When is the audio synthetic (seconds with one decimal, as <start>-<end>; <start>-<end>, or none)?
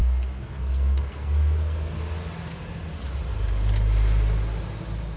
0.0-2.0